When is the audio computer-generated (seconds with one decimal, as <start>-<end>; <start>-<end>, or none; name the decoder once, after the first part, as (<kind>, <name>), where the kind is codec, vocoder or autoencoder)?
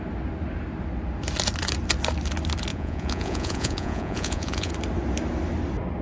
2.7-4.7 (vocoder, Vocos)